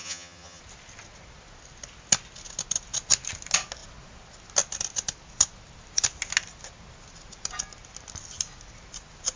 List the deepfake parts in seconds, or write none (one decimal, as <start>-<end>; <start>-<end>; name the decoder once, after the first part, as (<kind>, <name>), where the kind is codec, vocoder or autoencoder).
0.0-0.6 (vocoder, HiFi-GAN)